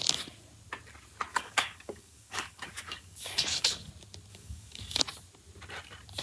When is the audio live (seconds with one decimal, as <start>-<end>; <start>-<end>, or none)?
0.0-1.3; 3.9-4.3; 5.0-6.2

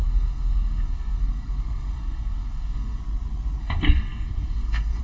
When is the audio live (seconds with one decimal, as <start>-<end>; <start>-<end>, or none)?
3.0-3.6